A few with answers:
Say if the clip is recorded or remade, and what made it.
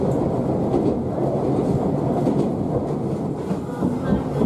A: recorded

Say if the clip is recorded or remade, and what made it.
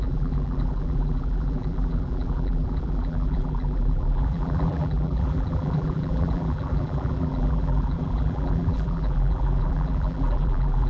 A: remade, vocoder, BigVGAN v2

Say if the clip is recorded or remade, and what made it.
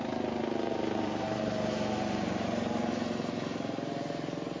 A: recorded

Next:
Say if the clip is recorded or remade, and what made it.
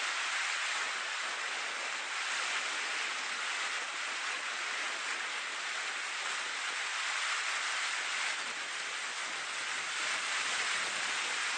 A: recorded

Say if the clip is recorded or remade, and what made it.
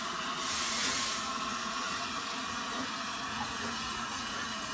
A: remade, vocoder, Vocos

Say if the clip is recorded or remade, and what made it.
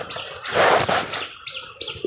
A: recorded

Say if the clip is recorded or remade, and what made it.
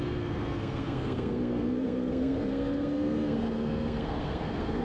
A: remade, codec, SNAC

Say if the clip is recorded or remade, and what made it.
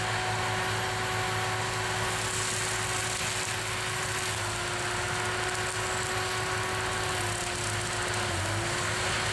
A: recorded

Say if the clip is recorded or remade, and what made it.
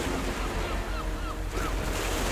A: recorded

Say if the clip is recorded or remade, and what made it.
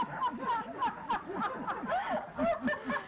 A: recorded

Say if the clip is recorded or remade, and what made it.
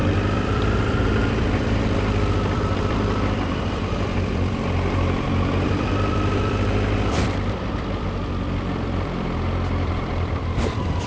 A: remade, vocoder, BigVGAN v2